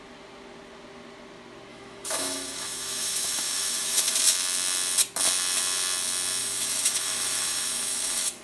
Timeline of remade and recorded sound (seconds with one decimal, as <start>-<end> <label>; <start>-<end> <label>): 0.0-1.7 recorded; 1.7-4.2 remade; 4.2-6.4 recorded; 6.4-8.4 remade